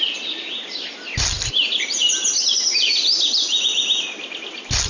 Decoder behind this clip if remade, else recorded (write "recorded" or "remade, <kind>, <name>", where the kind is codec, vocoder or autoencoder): recorded